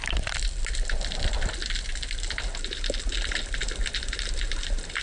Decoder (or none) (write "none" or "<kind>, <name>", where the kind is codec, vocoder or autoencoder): none